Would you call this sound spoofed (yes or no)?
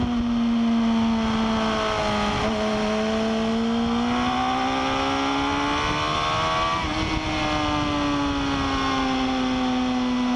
no